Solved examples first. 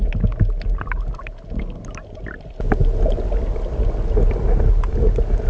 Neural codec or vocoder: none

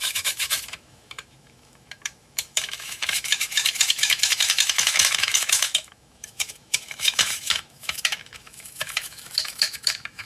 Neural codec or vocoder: autoencoder, DAC-VAE